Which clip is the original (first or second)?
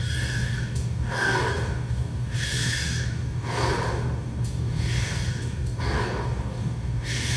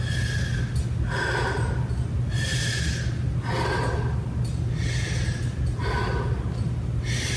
second